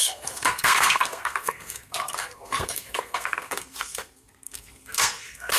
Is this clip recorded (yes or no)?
no